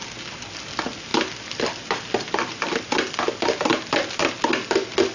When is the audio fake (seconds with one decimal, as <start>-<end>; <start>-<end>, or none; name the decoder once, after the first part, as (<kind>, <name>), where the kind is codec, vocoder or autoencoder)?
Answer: none

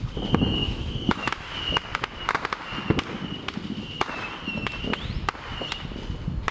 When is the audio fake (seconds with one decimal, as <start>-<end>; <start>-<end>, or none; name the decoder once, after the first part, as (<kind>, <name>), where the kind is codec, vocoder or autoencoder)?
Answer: 0.6-1.5 (autoencoder, DAC-VAE)